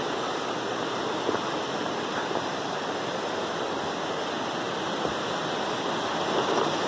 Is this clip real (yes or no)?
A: yes